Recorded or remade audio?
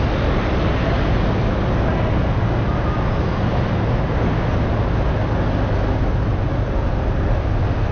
recorded